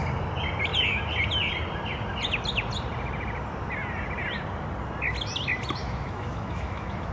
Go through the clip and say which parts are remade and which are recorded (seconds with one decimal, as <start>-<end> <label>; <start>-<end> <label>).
0.0-5.8 recorded; 5.8-7.1 remade